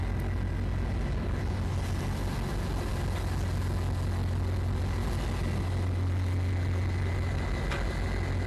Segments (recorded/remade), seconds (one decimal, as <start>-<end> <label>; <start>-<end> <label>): 0.0-8.5 recorded

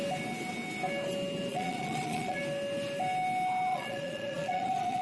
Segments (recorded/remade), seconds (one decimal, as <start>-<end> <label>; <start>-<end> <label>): 0.0-1.5 recorded; 1.5-2.4 remade; 2.4-3.7 recorded; 3.7-5.0 remade

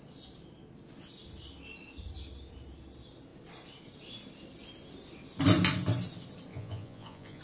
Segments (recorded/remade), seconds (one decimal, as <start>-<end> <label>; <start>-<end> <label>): 0.0-6.5 recorded; 6.5-7.4 remade

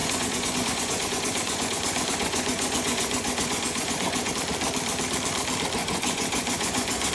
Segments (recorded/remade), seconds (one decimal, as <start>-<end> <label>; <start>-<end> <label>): 0.0-4.3 remade; 4.3-5.8 recorded; 5.8-7.1 remade

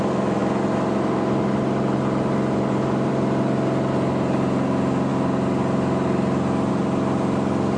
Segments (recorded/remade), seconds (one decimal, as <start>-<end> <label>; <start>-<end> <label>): 0.0-7.8 recorded